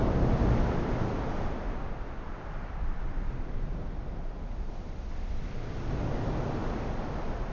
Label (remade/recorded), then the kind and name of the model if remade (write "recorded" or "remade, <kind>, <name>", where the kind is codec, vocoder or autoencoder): recorded